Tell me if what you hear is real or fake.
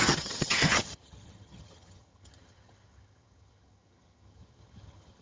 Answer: fake